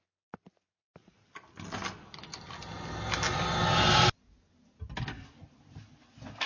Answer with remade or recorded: recorded